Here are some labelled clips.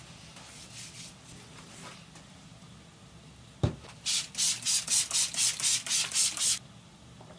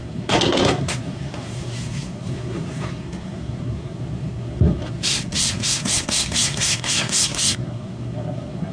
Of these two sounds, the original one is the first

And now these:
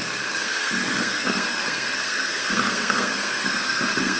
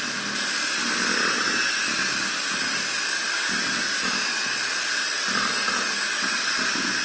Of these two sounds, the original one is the second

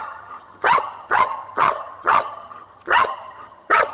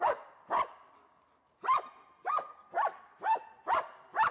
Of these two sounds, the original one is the second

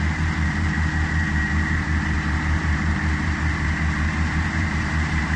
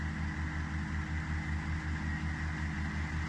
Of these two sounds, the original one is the second